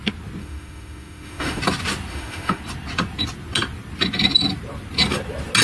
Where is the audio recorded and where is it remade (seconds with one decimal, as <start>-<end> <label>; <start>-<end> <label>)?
0.0-0.4 recorded; 0.4-1.6 remade; 1.6-2.1 recorded; 2.1-2.6 remade; 2.6-5.6 recorded